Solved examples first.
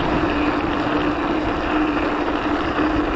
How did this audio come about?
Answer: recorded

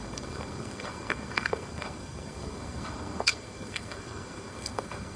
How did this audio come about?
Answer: remade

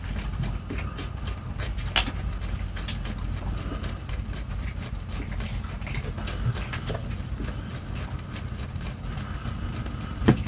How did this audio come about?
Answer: recorded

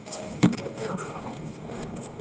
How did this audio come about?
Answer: remade